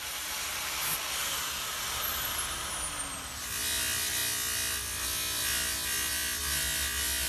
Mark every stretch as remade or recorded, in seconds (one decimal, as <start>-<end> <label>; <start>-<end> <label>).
0.0-7.3 recorded